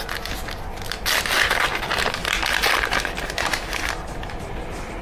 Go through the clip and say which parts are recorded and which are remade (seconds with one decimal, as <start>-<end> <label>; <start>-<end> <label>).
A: 0.0-5.0 recorded